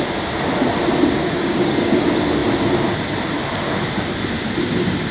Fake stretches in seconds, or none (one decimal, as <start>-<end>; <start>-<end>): 1.2-2.0